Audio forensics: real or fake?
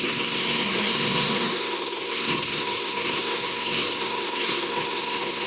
fake